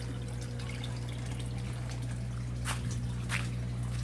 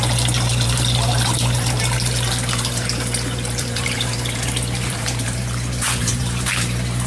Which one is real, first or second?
first